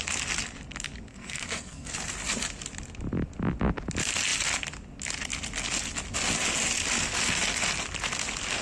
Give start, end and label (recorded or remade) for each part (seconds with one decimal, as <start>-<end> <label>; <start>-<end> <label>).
0.0-1.1 recorded; 1.1-1.9 remade; 1.9-8.6 recorded